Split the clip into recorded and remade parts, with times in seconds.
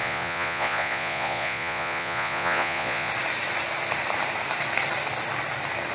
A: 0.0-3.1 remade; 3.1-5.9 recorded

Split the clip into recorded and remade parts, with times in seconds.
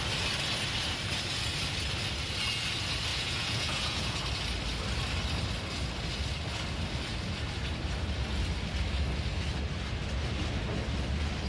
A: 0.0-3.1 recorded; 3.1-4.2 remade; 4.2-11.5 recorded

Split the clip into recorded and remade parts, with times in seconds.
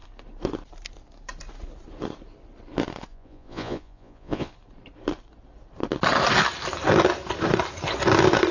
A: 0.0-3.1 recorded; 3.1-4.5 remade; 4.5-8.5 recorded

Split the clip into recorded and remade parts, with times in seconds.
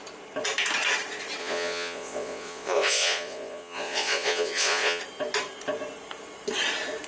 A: 0.0-1.4 recorded; 1.4-5.0 remade; 5.0-7.1 recorded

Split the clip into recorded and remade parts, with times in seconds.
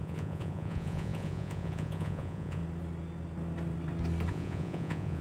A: 0.0-2.6 remade; 2.6-4.3 recorded; 4.3-5.2 remade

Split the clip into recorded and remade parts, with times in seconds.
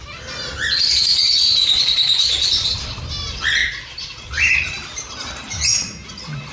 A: 0.0-1.1 recorded; 1.1-3.0 remade; 3.0-3.6 recorded; 3.6-4.4 remade; 4.4-6.5 recorded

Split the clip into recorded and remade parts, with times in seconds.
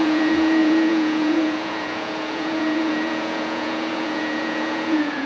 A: 0.0-5.3 remade